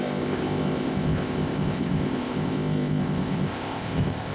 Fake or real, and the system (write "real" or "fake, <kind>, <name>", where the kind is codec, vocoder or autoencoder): fake, codec, ZipCodec